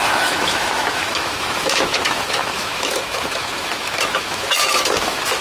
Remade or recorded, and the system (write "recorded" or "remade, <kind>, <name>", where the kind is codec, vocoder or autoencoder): remade, autoencoder, DAC-VAE